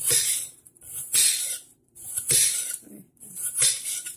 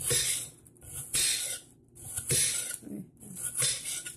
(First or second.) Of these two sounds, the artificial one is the first